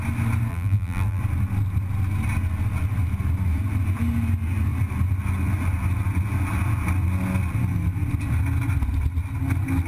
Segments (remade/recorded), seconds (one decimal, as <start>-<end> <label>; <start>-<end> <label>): 0.0-0.5 recorded; 0.5-1.2 remade; 1.2-9.9 recorded